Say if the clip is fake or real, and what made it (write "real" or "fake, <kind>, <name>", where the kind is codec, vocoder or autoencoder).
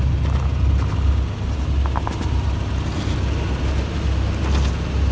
real